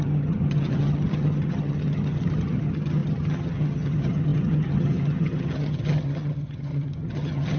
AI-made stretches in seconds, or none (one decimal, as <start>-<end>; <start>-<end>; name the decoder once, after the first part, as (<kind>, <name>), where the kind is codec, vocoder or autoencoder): 0.0-7.6 (vocoder, HiFi-GAN)